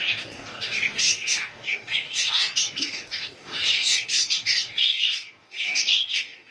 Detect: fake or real fake